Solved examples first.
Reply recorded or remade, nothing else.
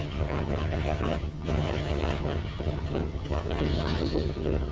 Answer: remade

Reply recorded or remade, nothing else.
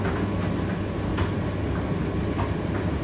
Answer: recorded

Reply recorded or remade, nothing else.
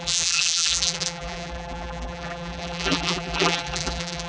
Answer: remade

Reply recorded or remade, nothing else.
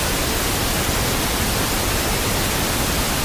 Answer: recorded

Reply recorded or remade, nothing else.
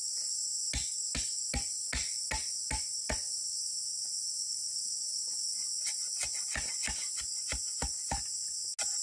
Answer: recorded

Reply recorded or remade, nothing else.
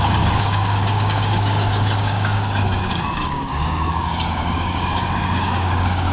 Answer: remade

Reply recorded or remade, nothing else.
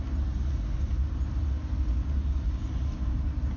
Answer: recorded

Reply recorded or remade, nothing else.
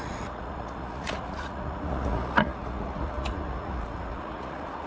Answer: remade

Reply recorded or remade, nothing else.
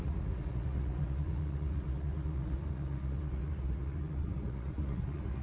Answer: remade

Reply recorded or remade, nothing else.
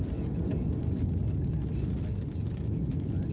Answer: recorded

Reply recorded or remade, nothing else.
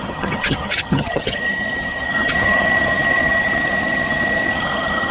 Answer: remade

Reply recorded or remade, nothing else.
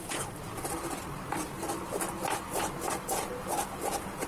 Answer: recorded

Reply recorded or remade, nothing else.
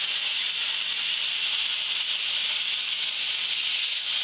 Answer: recorded